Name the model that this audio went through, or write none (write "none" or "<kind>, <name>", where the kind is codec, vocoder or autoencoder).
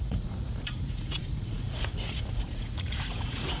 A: vocoder, Vocos